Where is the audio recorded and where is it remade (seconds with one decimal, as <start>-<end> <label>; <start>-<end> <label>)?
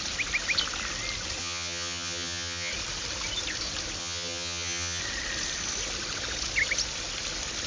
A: 0.0-1.4 recorded; 1.4-2.7 remade; 2.7-4.0 recorded; 4.0-5.0 remade; 5.0-7.7 recorded